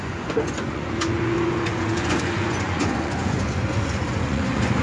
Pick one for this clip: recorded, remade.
remade